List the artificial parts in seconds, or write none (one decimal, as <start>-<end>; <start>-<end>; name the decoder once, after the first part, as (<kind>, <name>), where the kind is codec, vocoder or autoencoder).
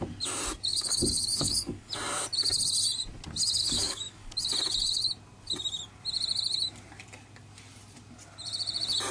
0.7-1.9 (codec, DAC); 3.6-4.3